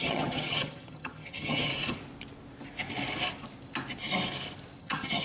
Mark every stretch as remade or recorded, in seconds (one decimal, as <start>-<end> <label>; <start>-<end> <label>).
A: 0.0-1.7 remade; 1.7-4.8 recorded; 4.8-5.2 remade